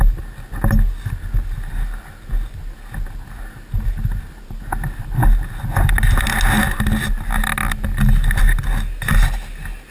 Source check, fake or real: real